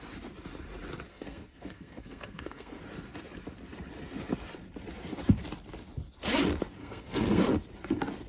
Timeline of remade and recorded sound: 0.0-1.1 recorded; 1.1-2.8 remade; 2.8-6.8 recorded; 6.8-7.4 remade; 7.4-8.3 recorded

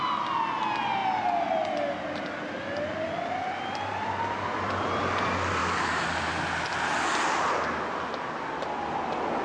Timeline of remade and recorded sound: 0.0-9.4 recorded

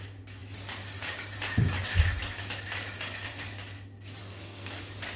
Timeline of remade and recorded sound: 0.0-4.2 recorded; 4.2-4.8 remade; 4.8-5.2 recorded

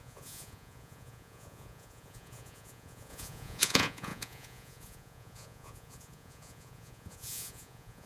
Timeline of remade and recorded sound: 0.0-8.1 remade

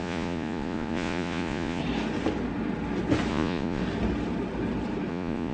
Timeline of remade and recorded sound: 0.0-1.8 remade; 1.8-3.3 recorded; 3.3-3.8 remade; 3.8-5.1 recorded; 5.1-5.5 remade